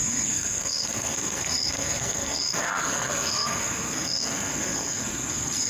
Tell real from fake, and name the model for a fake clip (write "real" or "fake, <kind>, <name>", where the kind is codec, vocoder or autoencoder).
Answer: fake, codec, SNAC